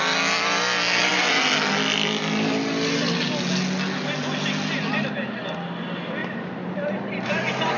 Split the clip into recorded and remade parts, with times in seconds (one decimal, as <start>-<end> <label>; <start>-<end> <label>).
0.0-6.2 recorded; 6.2-7.8 remade